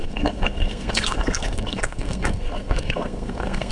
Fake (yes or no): yes